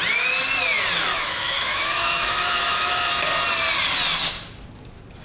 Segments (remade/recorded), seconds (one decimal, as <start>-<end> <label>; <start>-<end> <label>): 0.0-1.1 recorded; 1.1-3.1 remade; 3.1-5.2 recorded